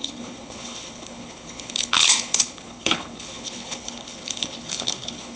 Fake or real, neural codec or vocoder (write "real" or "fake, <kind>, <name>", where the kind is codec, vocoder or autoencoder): fake, codec, HILCodec